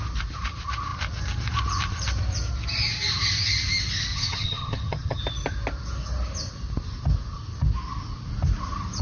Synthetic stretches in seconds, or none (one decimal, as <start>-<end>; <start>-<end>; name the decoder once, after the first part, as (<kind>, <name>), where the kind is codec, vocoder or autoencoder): 4.1-5.2 (vocoder, HiFi-GAN)